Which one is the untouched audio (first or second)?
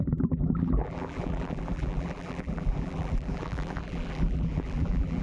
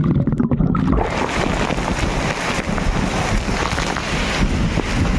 second